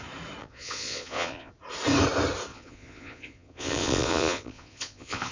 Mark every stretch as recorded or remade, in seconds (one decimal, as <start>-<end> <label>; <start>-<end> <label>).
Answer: 0.0-0.4 recorded; 0.4-1.5 remade; 1.5-2.5 recorded; 2.5-5.3 remade